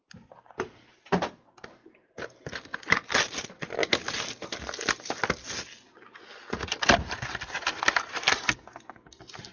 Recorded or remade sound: recorded